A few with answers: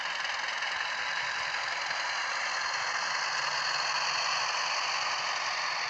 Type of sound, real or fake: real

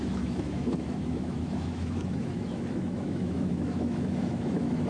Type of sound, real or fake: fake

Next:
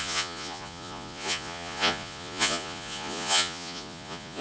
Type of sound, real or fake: fake